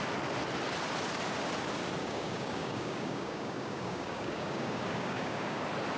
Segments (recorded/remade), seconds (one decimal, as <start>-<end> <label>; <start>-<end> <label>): 0.0-2.0 recorded; 2.0-5.6 remade; 5.6-6.0 recorded